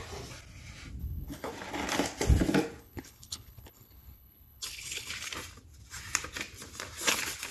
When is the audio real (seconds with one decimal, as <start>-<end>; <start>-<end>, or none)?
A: 0.0-1.0; 1.5-2.8; 5.1-7.5